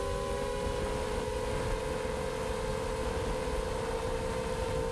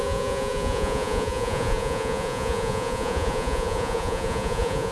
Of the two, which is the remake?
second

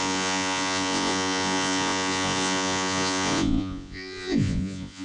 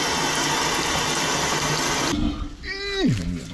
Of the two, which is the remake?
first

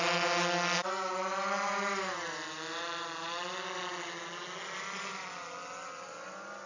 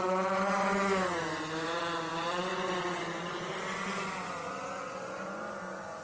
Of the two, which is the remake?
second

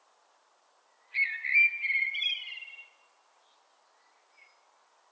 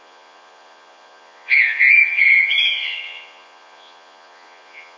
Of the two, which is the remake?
second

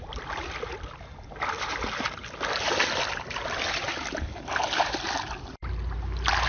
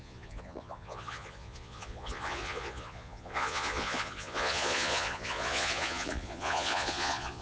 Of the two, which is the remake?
second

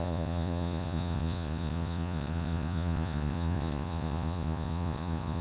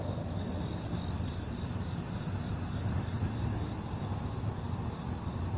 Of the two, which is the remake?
first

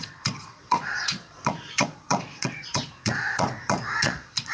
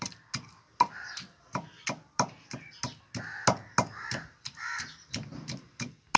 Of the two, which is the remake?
first